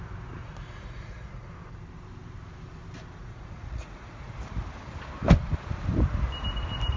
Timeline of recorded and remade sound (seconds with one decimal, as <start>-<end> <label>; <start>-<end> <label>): 0.0-0.4 recorded; 0.4-1.5 remade; 1.5-3.2 recorded; 3.2-4.4 remade; 4.4-7.0 recorded